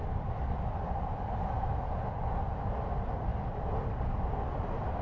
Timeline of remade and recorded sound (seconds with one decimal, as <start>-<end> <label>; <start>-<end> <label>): 0.0-5.0 recorded